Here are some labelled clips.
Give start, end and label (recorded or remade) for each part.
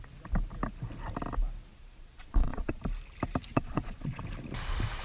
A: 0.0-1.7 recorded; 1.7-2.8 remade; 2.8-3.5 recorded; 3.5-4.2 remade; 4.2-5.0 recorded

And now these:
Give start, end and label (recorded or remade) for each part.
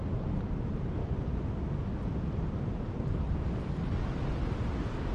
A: 0.0-5.1 recorded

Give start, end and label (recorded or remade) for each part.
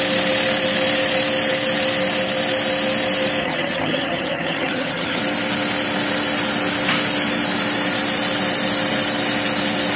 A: 0.0-3.4 recorded; 3.4-5.2 remade; 5.2-10.0 recorded